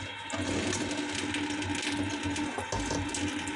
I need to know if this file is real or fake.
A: real